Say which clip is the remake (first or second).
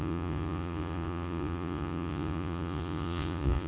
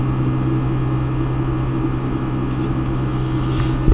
first